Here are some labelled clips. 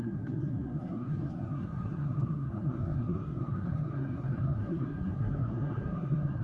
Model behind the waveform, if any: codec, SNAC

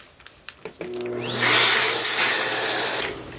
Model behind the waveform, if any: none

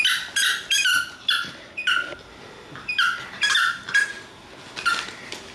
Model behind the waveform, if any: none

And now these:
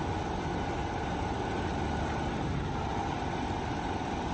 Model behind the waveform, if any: none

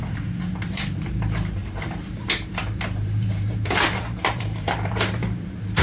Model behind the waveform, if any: vocoder, BigVGAN v2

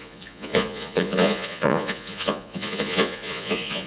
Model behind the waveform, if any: vocoder, Vocos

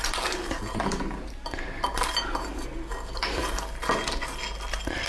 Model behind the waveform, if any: none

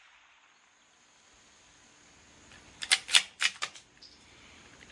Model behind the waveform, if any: none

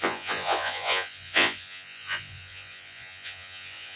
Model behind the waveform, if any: vocoder, Vocos